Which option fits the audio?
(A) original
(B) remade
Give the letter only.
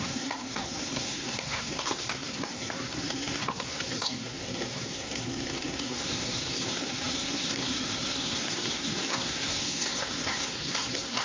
B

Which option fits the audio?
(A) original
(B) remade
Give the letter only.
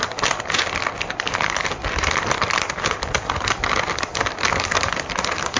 A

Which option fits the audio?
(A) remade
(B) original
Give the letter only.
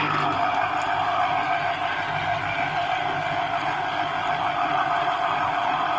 B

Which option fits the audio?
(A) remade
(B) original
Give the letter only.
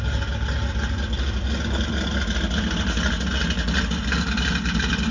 B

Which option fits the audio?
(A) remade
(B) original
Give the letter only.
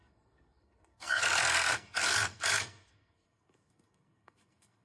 A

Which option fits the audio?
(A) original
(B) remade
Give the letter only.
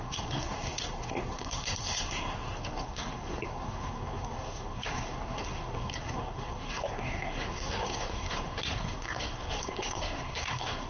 B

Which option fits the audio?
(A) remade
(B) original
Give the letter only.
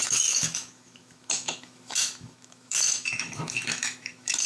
A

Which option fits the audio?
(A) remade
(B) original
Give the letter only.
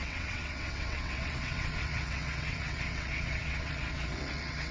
A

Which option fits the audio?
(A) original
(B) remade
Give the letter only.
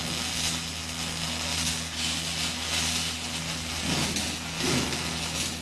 A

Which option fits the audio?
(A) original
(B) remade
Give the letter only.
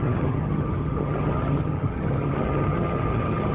B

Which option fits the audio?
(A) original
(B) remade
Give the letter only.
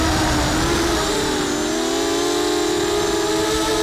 A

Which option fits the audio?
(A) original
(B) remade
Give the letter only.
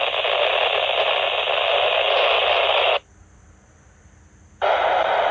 A